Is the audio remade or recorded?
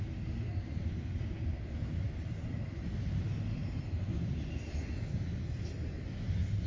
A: recorded